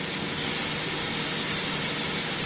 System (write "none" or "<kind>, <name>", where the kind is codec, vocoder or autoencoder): none